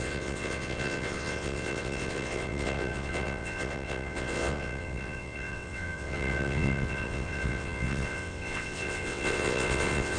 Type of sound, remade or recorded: remade